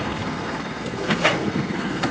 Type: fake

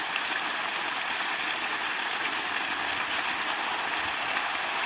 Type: real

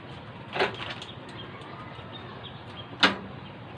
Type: real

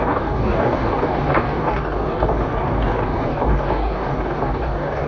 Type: fake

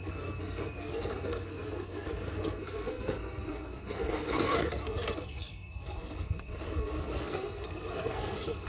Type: fake